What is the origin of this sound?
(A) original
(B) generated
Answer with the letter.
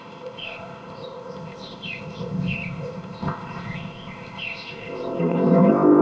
B